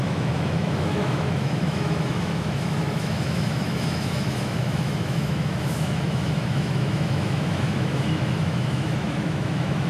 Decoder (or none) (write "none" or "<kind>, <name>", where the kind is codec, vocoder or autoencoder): autoencoder, DAC-VAE